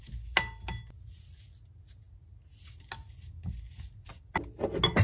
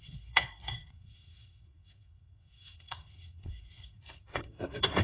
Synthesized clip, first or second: second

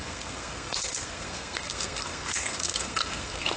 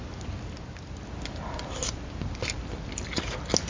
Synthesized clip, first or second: first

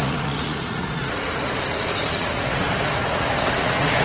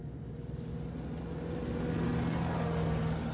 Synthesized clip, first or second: first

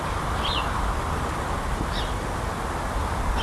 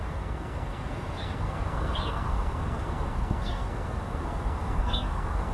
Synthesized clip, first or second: second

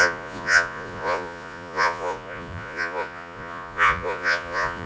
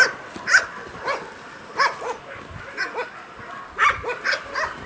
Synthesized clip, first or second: first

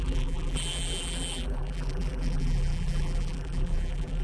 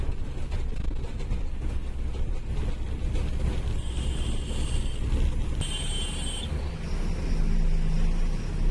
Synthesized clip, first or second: first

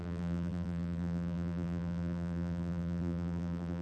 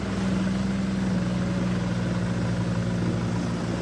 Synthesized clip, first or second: first